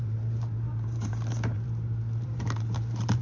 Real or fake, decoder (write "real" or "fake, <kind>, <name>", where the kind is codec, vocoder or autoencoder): fake, vocoder, BigVGAN v2